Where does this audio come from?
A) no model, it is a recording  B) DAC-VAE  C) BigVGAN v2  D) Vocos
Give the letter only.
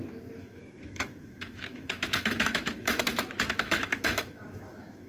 B